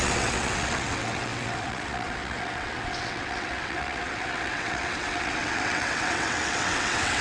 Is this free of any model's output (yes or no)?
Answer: no